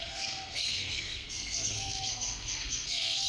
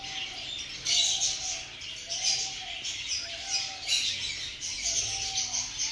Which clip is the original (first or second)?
second